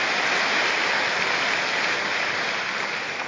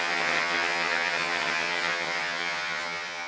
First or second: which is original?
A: first